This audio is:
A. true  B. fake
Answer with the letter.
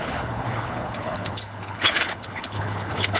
B